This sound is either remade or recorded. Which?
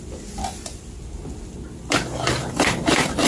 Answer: recorded